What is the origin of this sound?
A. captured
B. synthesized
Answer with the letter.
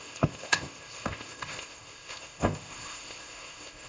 B